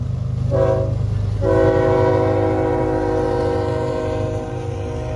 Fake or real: real